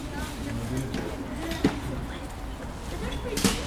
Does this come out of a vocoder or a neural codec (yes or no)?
no